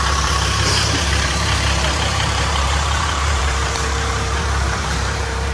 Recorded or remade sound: remade